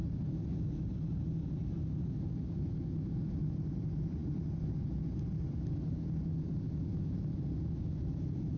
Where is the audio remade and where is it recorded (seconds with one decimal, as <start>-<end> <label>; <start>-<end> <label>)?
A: 0.0-8.6 recorded